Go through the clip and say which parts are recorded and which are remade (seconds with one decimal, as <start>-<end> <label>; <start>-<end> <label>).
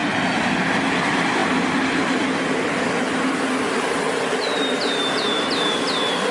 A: 0.0-6.3 recorded